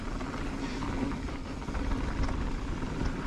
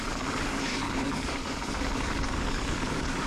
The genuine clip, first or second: first